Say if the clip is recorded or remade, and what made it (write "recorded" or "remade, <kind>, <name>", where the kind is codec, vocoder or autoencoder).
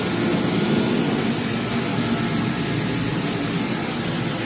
recorded